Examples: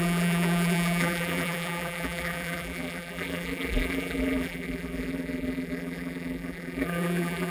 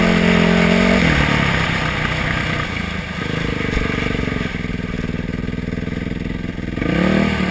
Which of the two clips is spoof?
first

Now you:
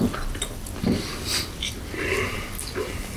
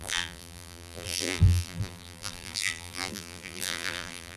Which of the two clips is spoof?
second